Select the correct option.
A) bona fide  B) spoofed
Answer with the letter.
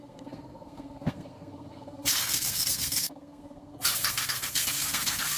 B